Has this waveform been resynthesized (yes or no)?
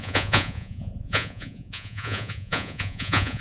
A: yes